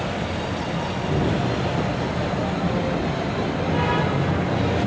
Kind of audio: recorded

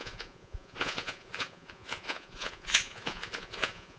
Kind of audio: remade